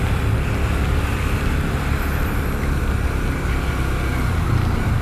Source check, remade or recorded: recorded